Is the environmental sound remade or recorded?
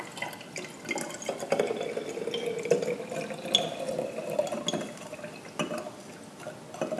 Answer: recorded